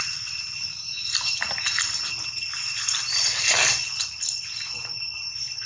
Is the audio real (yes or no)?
yes